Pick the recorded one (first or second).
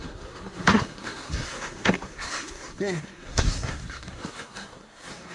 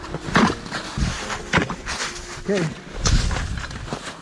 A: second